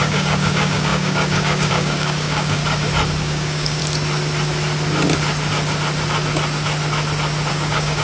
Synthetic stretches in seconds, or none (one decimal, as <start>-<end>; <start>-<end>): 0.0-2.6; 3.2-3.8; 7.5-8.0